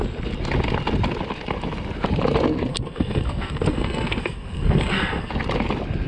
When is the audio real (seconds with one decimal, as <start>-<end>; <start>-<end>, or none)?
0.0-2.7; 5.3-6.1